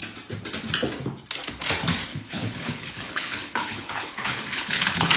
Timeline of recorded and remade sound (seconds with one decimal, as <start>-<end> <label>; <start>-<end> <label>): 0.0-2.1 recorded; 2.1-5.2 remade